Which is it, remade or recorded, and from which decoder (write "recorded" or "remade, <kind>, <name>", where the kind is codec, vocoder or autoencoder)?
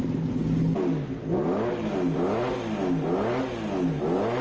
recorded